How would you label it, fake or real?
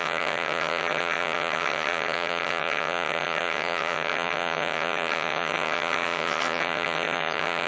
fake